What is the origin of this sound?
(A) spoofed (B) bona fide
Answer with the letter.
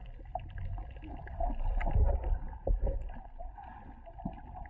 B